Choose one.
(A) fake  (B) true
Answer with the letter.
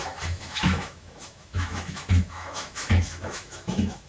A